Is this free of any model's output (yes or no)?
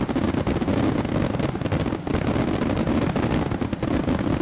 yes